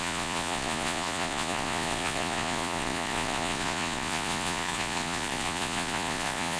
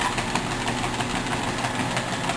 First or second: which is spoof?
first